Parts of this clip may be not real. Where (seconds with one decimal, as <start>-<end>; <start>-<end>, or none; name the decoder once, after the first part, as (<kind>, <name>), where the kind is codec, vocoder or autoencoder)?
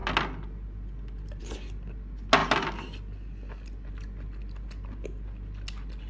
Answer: none